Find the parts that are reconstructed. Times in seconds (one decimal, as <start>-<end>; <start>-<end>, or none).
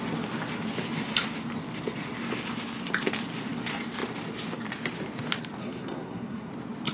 5.6-6.5